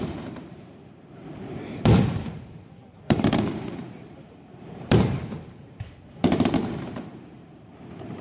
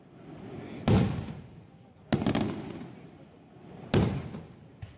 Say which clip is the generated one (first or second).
first